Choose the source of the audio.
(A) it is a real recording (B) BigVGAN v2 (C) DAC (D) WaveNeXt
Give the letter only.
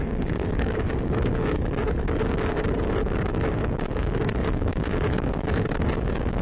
C